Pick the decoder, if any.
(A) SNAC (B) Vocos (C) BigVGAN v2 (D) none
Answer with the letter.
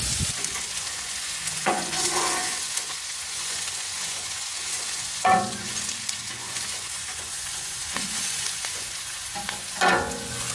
B